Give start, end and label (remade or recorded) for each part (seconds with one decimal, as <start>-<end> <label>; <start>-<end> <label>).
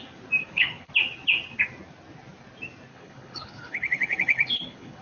0.0-0.4 recorded; 0.4-0.9 remade; 0.9-2.9 recorded; 2.9-5.0 remade